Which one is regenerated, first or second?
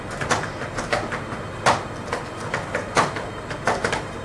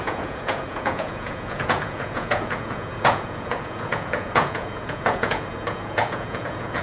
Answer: second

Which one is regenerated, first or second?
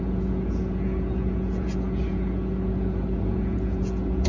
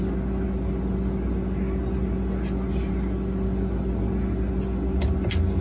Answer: first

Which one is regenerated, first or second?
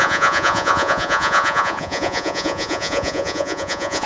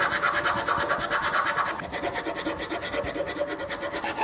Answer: first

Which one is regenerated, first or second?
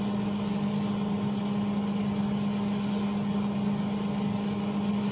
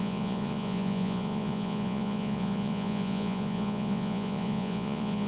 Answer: second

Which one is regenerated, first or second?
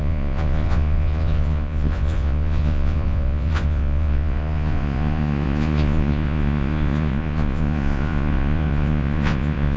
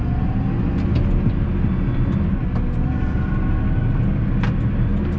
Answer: first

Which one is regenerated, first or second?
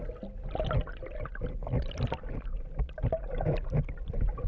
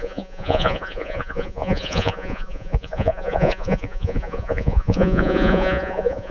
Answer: second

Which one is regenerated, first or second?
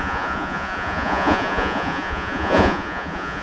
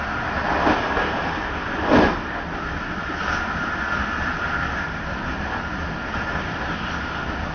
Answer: first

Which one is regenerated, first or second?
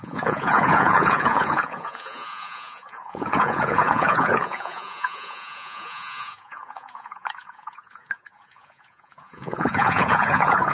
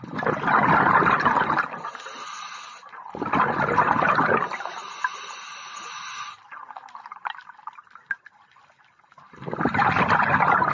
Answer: first